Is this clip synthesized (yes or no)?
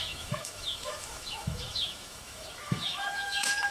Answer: yes